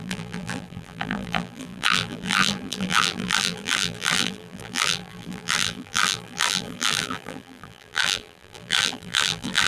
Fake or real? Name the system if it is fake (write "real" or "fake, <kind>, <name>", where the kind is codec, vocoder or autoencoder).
fake, vocoder, BigVGAN v2